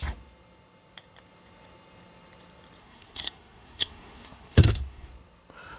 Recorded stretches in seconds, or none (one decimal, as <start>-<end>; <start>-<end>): 0.0-2.8; 5.1-5.8